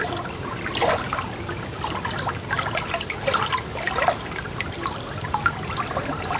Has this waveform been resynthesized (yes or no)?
no